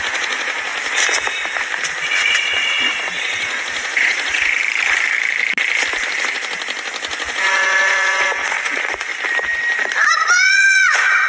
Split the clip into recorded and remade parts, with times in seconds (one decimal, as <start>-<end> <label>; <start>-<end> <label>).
0.0-0.7 remade; 0.7-2.1 recorded; 2.1-4.6 remade; 4.6-7.3 recorded; 7.3-9.1 remade; 9.1-10.1 recorded; 10.1-11.3 remade